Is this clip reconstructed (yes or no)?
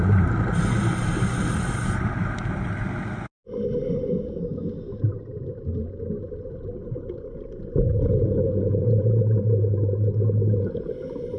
no